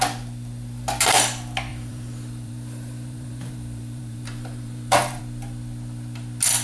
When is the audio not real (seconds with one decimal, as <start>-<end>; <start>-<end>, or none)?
1.7-5.2